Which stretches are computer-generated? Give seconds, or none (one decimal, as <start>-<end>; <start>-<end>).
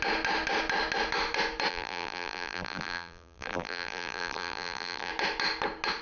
1.7-5.1